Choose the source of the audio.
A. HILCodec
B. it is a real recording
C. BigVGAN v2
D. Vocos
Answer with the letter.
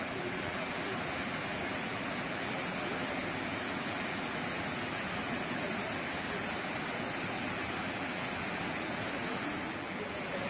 C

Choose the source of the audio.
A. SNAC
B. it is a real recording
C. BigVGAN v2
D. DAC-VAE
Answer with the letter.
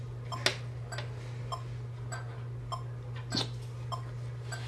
B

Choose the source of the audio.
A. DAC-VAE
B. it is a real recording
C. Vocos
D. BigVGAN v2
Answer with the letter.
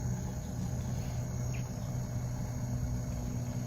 B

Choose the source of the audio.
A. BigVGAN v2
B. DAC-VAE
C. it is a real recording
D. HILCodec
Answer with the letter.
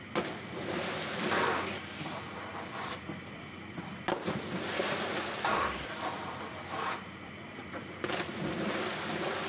A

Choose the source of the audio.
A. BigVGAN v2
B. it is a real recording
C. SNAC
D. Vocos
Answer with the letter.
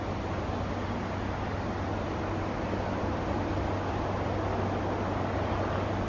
B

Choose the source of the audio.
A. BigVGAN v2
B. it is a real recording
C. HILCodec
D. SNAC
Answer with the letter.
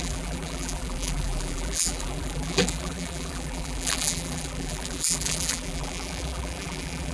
A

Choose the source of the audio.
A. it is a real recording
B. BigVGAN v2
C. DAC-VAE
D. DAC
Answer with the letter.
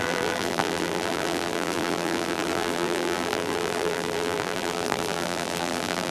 B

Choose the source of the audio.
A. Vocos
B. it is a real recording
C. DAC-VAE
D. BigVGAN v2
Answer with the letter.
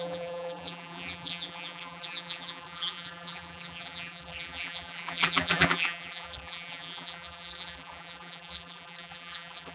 D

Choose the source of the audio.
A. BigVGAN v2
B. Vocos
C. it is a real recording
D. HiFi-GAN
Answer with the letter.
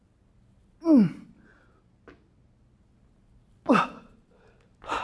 C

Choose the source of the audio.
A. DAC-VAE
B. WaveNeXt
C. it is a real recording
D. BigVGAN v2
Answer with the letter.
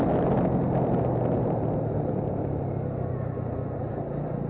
C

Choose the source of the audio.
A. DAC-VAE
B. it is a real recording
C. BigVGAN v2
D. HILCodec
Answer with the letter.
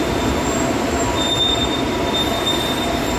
C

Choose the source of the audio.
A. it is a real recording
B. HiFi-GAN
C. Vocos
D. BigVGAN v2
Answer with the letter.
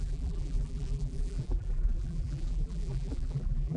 D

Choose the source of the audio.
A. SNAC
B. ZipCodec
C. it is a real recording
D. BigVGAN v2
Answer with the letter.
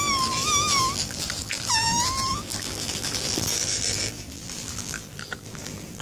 D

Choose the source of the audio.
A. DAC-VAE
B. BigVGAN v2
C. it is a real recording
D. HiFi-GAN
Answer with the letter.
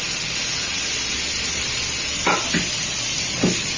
C